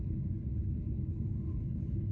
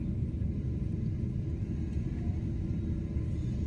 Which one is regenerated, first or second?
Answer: first